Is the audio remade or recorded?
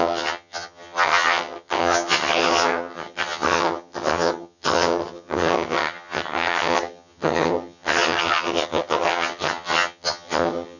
remade